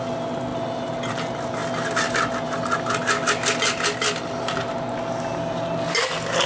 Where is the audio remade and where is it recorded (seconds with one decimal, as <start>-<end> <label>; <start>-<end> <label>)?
0.0-6.5 recorded